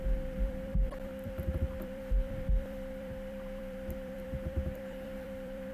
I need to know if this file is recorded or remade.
remade